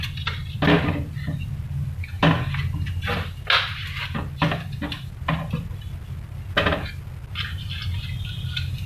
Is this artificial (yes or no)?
no